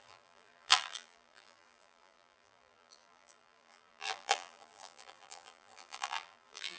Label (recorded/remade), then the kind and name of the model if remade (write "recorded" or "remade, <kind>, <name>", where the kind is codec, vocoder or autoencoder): remade, vocoder, BigVGAN v2